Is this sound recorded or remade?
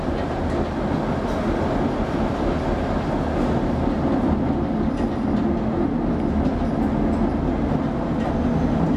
recorded